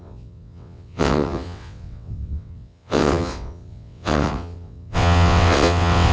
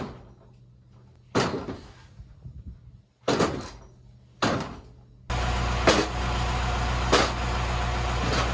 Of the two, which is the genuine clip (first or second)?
second